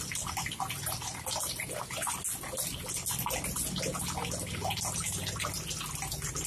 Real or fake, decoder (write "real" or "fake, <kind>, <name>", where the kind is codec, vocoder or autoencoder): real